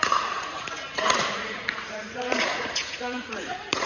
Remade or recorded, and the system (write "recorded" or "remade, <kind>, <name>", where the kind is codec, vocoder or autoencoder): remade, vocoder, Vocos